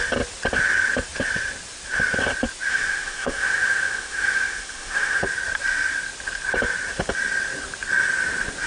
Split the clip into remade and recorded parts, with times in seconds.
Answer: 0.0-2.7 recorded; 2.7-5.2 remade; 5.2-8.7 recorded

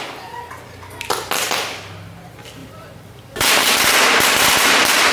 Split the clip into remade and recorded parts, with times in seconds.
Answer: 0.0-2.6 recorded; 2.6-3.9 remade; 3.9-5.1 recorded

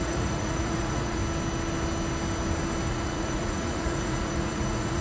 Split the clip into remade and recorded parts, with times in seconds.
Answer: 0.0-1.2 remade; 1.2-2.9 recorded; 2.9-5.0 remade

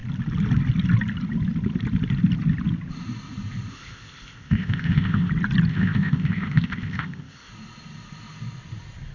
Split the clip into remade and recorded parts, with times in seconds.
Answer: 0.0-3.7 recorded; 3.7-5.3 remade; 5.3-5.7 recorded; 5.7-7.5 remade; 7.5-9.1 recorded